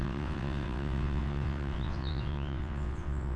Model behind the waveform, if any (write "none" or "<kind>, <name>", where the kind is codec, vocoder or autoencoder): vocoder, WaveNeXt